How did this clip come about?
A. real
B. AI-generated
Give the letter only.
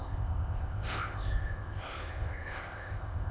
B